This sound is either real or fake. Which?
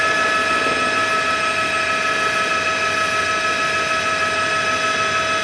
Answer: real